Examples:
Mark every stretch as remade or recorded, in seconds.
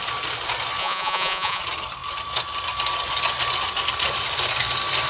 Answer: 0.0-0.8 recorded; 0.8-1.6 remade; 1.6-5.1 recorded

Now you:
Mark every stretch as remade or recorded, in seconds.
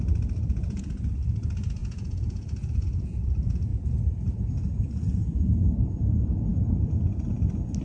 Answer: 0.0-0.4 recorded; 0.4-0.9 remade; 0.9-1.8 recorded; 1.8-3.2 remade; 3.2-7.8 recorded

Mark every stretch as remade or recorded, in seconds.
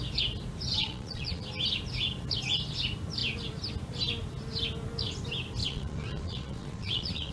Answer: 0.0-0.8 recorded; 0.8-1.4 remade; 1.4-5.6 recorded; 5.6-7.3 remade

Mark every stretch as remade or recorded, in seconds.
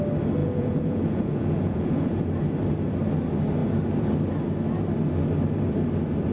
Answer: 0.0-0.4 recorded; 0.4-2.2 remade; 2.2-6.3 recorded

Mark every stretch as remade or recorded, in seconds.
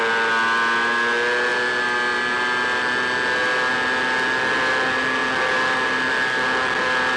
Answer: 0.0-7.2 recorded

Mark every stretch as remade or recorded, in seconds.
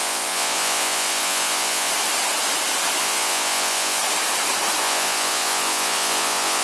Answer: 0.0-1.9 remade; 1.9-3.0 recorded; 3.0-4.0 remade; 4.0-4.8 recorded; 4.8-6.6 remade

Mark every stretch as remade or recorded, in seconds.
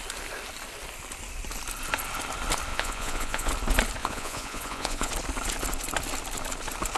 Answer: 0.0-2.7 recorded; 2.7-3.5 remade; 3.5-4.0 recorded; 4.0-5.1 remade; 5.1-7.0 recorded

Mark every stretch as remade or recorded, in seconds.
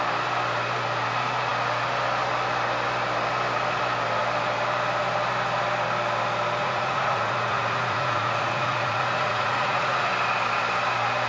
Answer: 0.0-6.6 recorded; 6.6-10.1 remade; 10.1-11.3 recorded